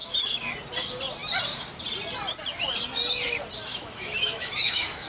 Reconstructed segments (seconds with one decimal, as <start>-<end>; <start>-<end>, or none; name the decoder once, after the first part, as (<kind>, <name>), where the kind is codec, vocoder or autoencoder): 0.0-0.5 (autoencoder, DAC-VAE); 3.7-5.1